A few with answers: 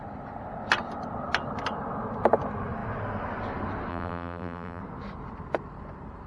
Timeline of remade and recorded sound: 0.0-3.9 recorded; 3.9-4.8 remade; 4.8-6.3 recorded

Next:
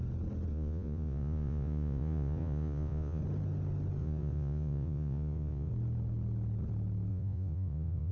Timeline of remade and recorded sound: 0.0-0.5 recorded; 0.5-3.2 remade; 3.2-4.0 recorded; 4.0-5.7 remade; 5.7-7.1 recorded; 7.1-8.1 remade

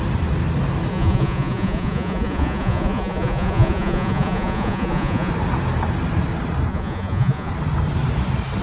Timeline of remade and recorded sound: 0.0-0.9 recorded; 0.9-5.3 remade; 5.3-6.7 recorded; 6.7-7.5 remade; 7.5-8.6 recorded

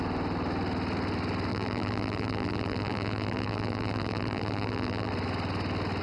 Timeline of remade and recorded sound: 0.0-1.5 recorded; 1.5-5.1 remade; 5.1-6.0 recorded

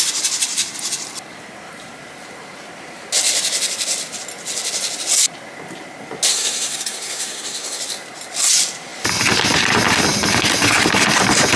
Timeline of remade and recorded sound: 0.0-6.3 recorded; 6.3-7.8 remade; 7.8-11.6 recorded

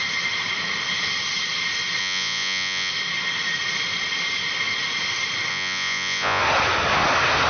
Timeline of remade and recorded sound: 0.0-2.0 recorded; 2.0-2.9 remade; 2.9-5.5 recorded; 5.5-6.4 remade; 6.4-7.5 recorded

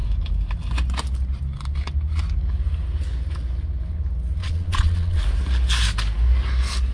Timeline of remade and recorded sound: 0.0-4.4 recorded; 4.4-5.2 remade; 5.2-6.9 recorded

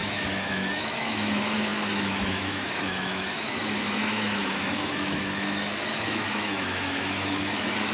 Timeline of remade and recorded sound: 0.0-7.9 remade